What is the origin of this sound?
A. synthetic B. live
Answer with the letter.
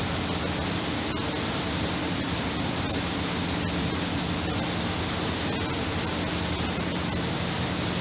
B